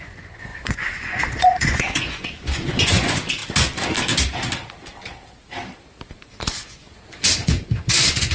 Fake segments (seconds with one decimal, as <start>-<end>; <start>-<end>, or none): 0.0-3.4; 6.3-8.3